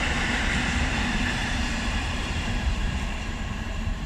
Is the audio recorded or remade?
remade